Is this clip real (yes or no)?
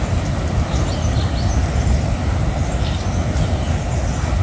yes